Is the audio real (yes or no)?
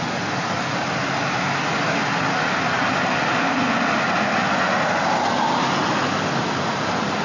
yes